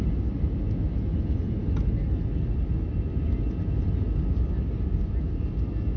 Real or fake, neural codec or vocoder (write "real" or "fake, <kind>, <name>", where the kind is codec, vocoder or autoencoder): real